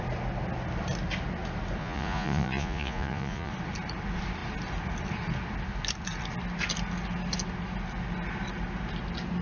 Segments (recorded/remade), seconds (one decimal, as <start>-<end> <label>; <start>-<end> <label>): 0.0-1.8 recorded; 1.8-3.5 remade; 3.5-9.4 recorded